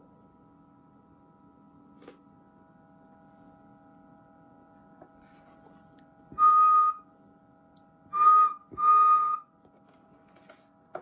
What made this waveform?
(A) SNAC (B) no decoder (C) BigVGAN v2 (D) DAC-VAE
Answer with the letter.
B